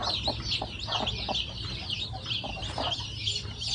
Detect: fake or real real